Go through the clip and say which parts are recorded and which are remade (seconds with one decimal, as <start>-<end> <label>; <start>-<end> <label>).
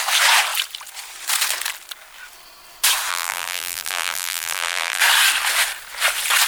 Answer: 0.0-3.1 recorded; 3.1-5.0 remade; 5.0-6.5 recorded